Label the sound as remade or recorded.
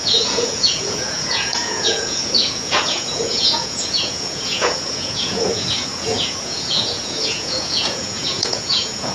remade